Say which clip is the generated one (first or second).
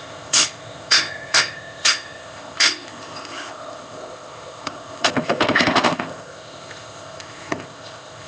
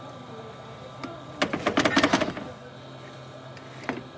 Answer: first